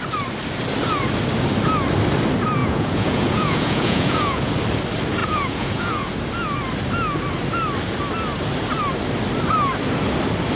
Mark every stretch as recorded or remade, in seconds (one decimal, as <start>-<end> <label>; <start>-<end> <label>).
0.0-2.6 recorded; 2.6-4.5 remade; 4.5-5.2 recorded; 5.2-6.1 remade; 6.1-10.6 recorded